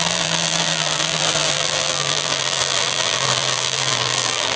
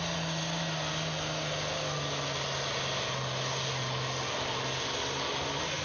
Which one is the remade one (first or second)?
first